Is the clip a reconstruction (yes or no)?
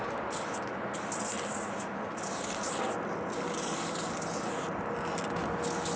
no